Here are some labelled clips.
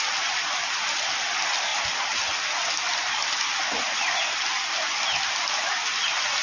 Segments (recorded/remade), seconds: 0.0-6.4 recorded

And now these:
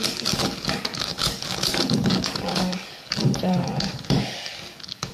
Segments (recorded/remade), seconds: 0.0-5.1 remade

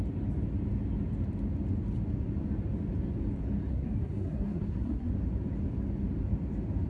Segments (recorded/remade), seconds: 0.0-3.7 recorded; 3.7-5.1 remade; 5.1-6.9 recorded

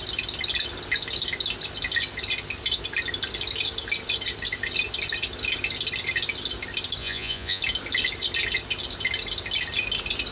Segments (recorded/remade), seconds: 0.0-7.0 recorded; 7.0-7.6 remade; 7.6-10.3 recorded

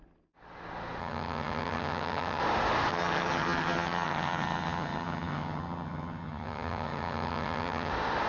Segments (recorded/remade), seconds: 0.0-1.0 recorded; 1.0-2.4 remade; 2.4-2.9 recorded; 2.9-7.9 remade; 7.9-8.3 recorded

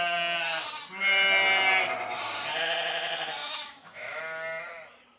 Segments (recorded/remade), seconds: 0.0-3.4 recorded; 3.4-4.2 remade; 4.2-5.2 recorded

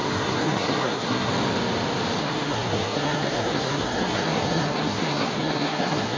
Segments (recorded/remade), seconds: 0.0-1.3 remade; 1.3-2.2 recorded; 2.2-6.2 remade

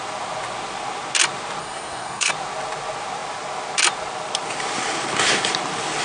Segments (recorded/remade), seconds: 0.0-1.6 recorded; 1.6-2.3 remade; 2.3-6.0 recorded